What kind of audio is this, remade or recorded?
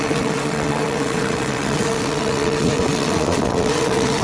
remade